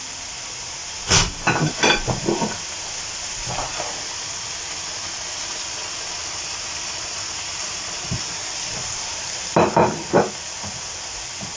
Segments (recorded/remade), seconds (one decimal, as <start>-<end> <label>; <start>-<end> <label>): 0.0-6.2 recorded; 6.2-8.8 remade; 8.8-11.6 recorded